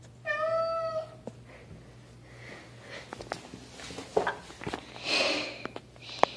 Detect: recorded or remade recorded